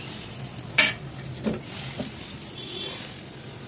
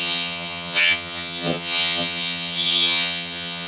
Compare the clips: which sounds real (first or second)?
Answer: first